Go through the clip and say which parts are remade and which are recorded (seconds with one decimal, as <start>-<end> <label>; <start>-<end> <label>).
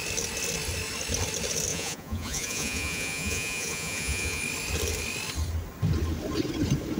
0.0-1.7 recorded; 1.7-4.4 remade; 4.4-7.0 recorded